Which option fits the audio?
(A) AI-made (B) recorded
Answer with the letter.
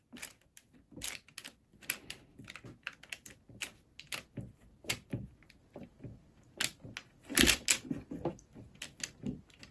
B